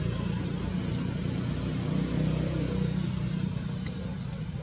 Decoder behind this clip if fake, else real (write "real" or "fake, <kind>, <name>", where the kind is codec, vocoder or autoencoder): real